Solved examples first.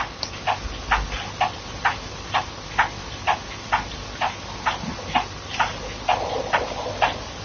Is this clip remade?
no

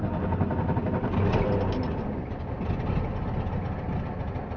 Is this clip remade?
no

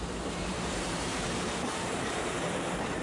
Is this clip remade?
yes